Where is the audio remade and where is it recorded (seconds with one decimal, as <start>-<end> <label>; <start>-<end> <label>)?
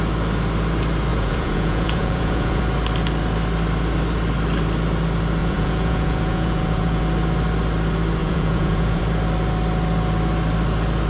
0.0-1.1 recorded; 1.1-2.6 remade; 2.6-5.4 recorded; 5.4-7.0 remade; 7.0-8.2 recorded; 8.2-9.0 remade; 9.0-11.1 recorded